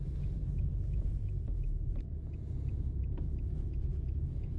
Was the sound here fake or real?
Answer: fake